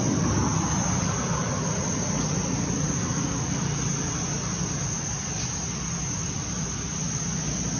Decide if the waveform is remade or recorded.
recorded